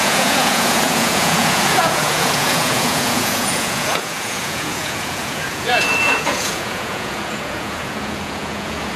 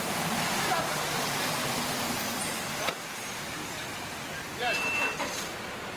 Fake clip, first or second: first